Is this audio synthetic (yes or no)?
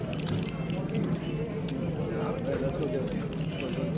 no